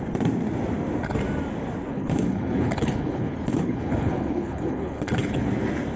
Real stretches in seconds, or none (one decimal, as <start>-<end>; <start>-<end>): 0.0-1.9; 5.5-6.0